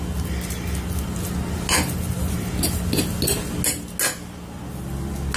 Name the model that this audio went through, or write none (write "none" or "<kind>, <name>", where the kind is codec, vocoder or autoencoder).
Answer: none